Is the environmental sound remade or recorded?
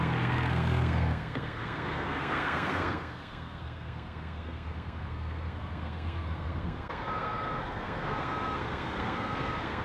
remade